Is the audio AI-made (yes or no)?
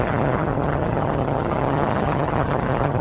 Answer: yes